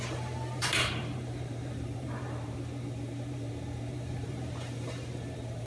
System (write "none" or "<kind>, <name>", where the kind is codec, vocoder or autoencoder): vocoder, BigVGAN v2